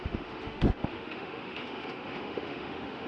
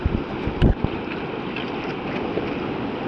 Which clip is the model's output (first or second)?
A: first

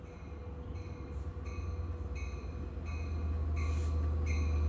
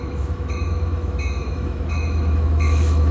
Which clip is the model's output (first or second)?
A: second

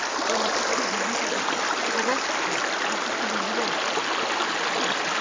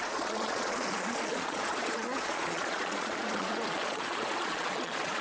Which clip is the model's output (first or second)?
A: second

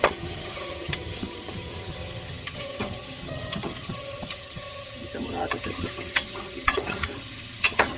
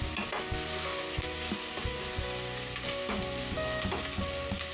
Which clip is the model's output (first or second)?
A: first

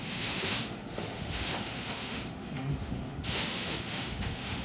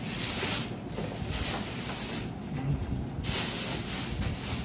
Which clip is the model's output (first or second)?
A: first